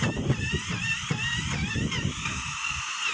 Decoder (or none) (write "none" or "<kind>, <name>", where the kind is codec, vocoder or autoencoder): none